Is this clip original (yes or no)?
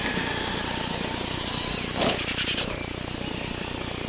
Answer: yes